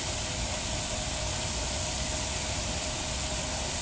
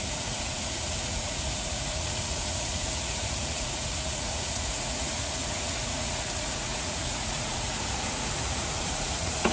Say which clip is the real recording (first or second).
first